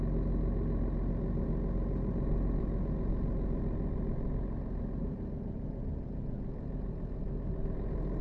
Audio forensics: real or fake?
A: real